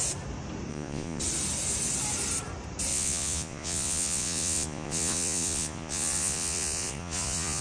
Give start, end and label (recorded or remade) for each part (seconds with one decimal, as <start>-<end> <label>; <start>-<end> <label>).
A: 0.0-0.7 recorded; 0.7-1.2 remade; 1.2-2.9 recorded; 2.9-7.6 remade